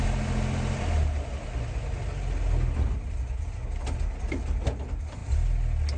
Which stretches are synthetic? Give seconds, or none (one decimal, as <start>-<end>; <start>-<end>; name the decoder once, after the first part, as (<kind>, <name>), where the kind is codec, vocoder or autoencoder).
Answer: none